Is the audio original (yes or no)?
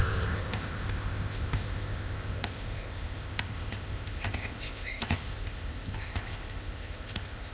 no